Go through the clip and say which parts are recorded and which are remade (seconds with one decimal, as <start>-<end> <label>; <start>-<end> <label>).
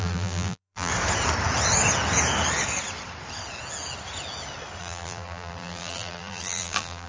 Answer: 0.0-0.9 remade; 0.9-4.8 recorded; 4.8-7.1 remade